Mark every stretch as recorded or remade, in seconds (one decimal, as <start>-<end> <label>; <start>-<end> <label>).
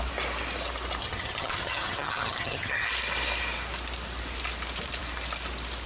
0.0-1.0 recorded; 1.0-2.9 remade; 2.9-5.9 recorded